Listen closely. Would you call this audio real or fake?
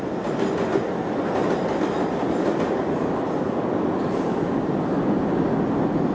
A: real